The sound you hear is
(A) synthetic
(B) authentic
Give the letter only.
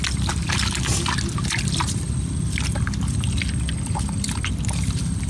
B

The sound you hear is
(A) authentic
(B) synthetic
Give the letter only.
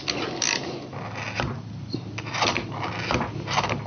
A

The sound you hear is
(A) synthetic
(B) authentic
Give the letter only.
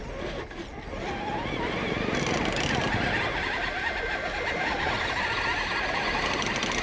B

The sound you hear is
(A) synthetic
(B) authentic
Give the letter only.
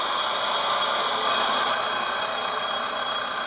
B